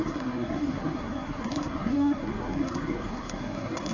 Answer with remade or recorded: remade